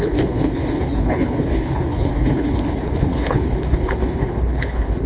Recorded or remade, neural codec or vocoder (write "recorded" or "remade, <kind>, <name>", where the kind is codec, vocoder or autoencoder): remade, codec, HILCodec